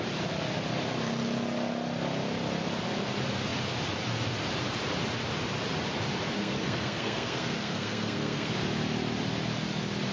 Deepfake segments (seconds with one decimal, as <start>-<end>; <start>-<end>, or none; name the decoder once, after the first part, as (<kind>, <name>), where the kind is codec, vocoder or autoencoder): 6.4-8.5 (codec, SNAC)